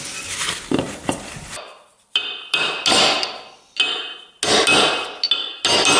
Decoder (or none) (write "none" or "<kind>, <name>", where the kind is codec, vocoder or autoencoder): none